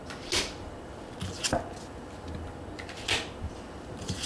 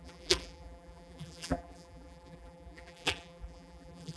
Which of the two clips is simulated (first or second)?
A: second